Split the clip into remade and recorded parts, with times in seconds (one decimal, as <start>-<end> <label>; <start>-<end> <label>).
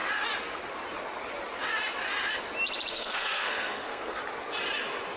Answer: 0.0-2.9 recorded; 2.9-4.2 remade; 4.2-5.2 recorded